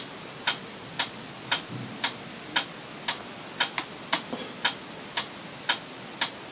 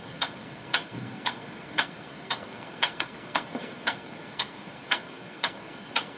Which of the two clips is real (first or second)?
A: first